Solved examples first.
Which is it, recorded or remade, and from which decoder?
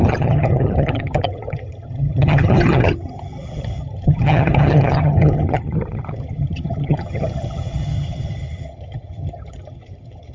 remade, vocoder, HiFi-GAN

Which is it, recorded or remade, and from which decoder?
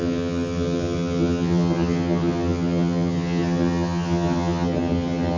remade, vocoder, HiFi-GAN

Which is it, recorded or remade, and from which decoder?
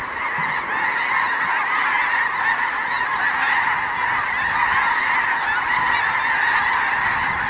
recorded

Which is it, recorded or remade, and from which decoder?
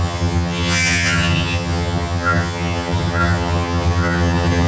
remade, vocoder, HiFi-GAN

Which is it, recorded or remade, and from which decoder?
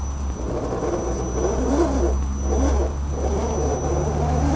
recorded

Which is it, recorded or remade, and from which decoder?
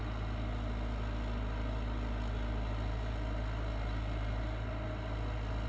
recorded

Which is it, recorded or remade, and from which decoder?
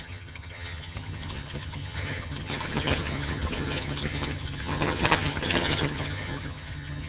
remade, vocoder, HiFi-GAN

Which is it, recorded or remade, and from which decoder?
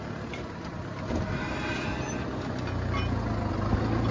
recorded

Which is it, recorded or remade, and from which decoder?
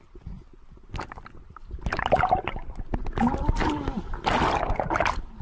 recorded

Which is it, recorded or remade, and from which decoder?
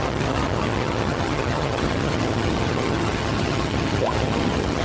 remade, vocoder, HiFi-GAN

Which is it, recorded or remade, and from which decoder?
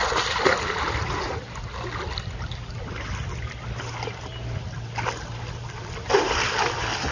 recorded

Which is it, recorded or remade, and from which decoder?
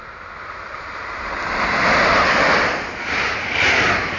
recorded